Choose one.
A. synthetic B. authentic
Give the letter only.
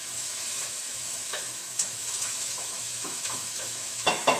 A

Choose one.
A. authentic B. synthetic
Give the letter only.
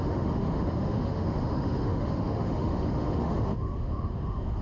B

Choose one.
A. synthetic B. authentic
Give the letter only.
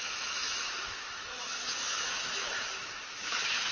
A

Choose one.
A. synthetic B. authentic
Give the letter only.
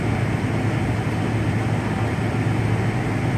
B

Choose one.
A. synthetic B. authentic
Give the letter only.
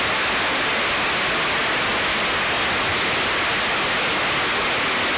B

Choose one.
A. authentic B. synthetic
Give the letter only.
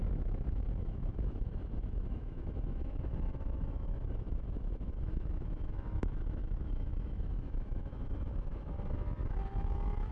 B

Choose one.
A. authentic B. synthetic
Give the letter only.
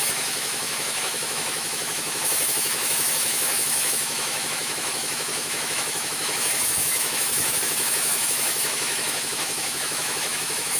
B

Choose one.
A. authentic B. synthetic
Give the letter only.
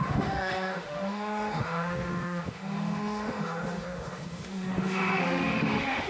B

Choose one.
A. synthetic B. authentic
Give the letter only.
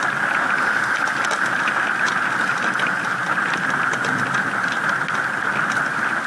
B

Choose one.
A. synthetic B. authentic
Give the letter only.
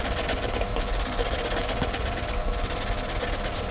B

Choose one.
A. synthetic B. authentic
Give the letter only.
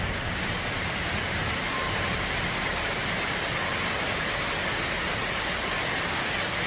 B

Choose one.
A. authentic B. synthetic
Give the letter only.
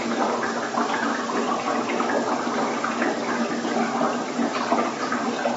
A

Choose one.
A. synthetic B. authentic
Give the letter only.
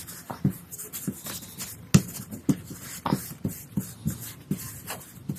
B